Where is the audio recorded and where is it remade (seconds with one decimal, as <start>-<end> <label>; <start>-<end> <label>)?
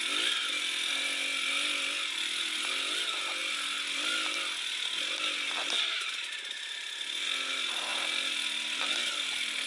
0.0-9.7 recorded